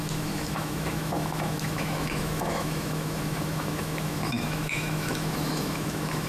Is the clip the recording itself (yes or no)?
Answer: no